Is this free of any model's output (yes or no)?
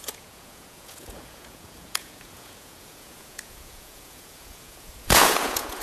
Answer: no